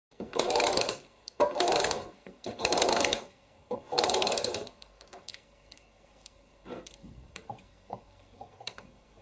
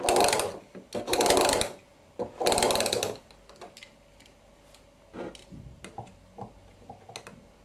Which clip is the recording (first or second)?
second